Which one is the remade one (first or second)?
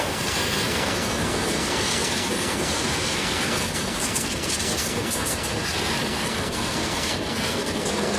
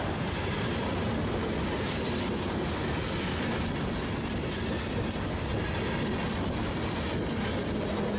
first